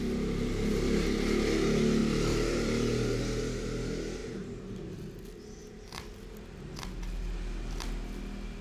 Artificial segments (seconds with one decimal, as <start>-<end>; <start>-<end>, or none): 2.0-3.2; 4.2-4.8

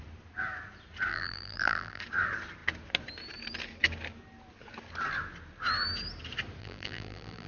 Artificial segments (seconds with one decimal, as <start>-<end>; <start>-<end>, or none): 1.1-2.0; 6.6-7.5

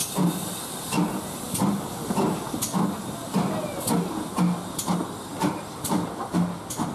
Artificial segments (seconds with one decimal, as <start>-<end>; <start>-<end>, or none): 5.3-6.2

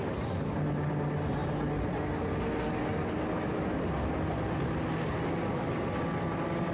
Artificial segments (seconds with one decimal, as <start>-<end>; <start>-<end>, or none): none

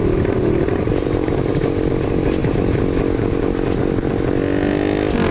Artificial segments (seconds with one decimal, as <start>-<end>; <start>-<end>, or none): 0.0-1.8